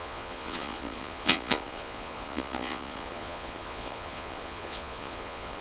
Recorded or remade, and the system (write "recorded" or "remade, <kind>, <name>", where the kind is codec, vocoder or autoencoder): remade, vocoder, Vocos